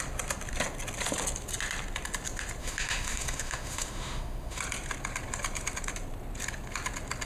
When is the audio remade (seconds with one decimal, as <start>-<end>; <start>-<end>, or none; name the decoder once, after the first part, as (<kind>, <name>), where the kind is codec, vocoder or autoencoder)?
2.6-4.6 (autoencoder, DAC-VAE)